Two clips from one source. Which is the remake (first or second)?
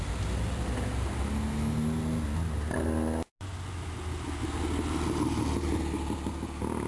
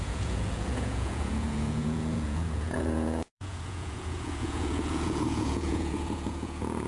second